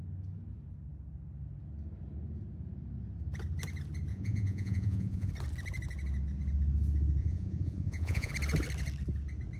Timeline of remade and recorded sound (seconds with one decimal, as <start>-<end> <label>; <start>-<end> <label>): 0.0-4.1 recorded; 4.1-5.3 remade; 5.3-7.2 recorded; 7.2-8.3 remade; 8.3-9.6 recorded